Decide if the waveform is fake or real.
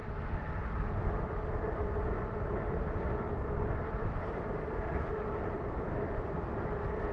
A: real